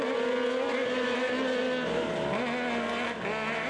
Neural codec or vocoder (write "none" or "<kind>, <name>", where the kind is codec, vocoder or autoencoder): none